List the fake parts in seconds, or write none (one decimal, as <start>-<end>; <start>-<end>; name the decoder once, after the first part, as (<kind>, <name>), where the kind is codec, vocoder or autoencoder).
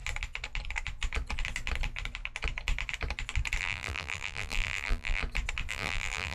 3.6-5.2 (vocoder, BigVGAN v2); 5.7-6.3